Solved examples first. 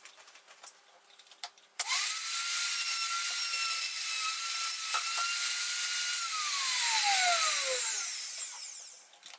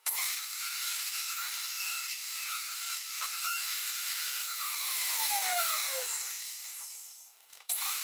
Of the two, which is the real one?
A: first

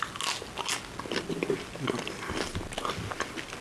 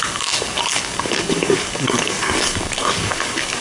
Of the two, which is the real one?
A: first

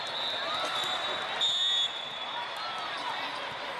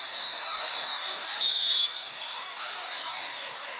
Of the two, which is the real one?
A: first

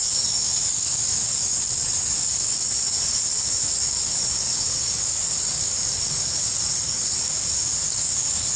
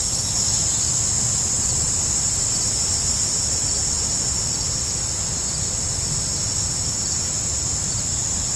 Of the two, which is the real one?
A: second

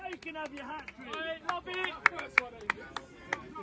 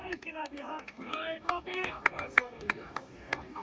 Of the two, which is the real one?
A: first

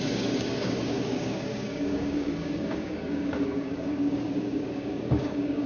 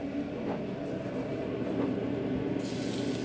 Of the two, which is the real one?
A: second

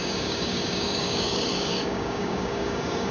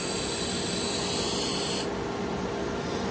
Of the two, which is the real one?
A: second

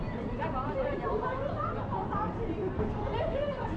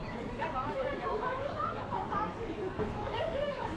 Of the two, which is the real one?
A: first